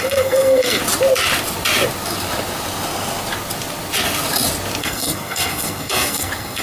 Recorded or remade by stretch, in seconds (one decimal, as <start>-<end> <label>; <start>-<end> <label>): 0.0-0.8 remade; 0.8-4.8 recorded; 4.8-6.6 remade